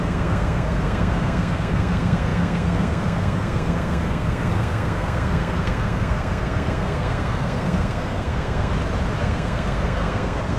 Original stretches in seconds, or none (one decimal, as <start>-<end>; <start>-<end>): 8.7-9.2